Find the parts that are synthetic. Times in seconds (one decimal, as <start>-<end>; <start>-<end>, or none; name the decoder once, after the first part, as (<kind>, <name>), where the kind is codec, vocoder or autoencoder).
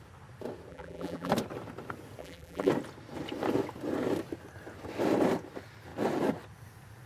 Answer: 0.7-1.3 (vocoder, BigVGAN v2); 2.2-2.7